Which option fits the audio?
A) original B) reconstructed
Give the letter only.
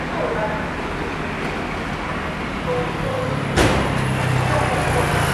A